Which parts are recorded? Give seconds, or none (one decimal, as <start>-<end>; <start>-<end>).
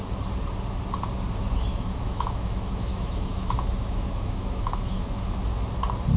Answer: 0.0-1.7; 5.4-6.2